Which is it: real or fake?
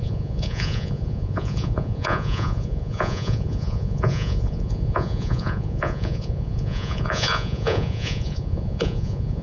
fake